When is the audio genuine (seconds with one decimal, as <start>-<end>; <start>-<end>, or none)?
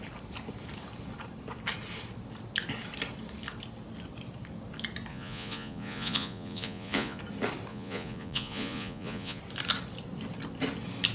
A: 0.0-5.1; 7.2-7.7; 9.4-11.1